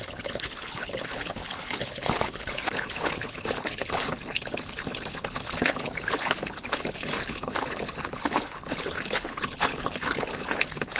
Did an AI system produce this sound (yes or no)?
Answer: yes